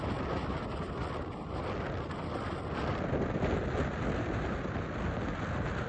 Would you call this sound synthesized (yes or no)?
no